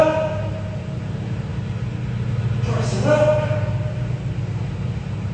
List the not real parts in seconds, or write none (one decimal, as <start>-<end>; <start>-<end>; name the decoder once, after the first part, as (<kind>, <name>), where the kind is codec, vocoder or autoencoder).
none